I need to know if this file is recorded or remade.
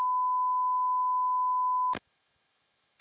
remade